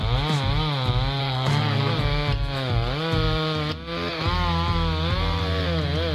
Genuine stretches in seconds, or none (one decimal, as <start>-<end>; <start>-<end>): 0.0-1.2; 1.9-6.1